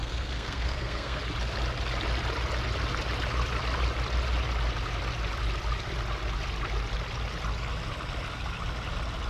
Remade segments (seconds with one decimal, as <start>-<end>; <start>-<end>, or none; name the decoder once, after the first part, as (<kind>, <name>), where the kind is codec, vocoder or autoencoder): 0.0-1.2 (codec, SNAC)